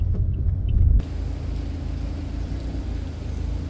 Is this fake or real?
real